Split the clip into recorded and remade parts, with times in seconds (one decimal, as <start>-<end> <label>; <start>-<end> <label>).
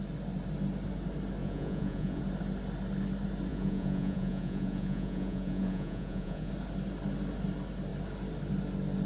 0.0-1.4 recorded; 1.4-2.2 remade; 2.2-3.5 recorded; 3.5-6.5 remade; 6.5-9.1 recorded